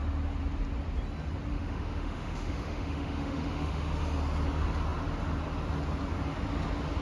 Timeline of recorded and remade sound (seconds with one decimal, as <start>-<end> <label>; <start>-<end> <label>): 0.0-1.5 recorded; 1.5-4.0 remade; 4.0-7.0 recorded